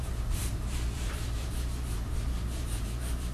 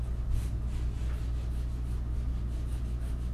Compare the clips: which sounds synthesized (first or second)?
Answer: first